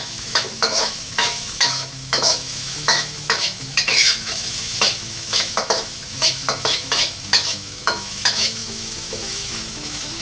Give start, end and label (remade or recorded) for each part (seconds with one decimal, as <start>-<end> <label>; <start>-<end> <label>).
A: 0.0-10.2 remade